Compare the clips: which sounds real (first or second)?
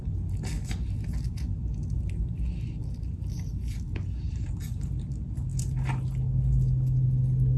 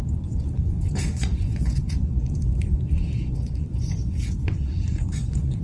first